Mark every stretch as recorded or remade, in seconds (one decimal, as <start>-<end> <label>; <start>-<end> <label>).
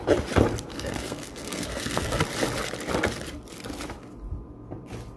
0.0-0.7 recorded; 0.7-2.2 remade; 2.2-5.2 recorded